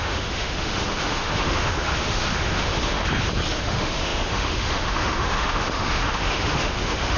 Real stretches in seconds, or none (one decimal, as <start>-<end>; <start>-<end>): 3.0-3.6